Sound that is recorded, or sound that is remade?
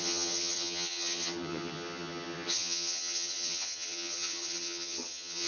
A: remade